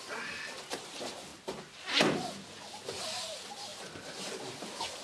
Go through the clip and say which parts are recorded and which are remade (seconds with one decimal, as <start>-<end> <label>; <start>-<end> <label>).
0.0-5.0 recorded